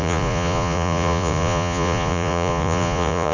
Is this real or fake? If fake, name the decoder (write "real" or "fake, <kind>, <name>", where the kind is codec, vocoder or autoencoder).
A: fake, vocoder, Vocos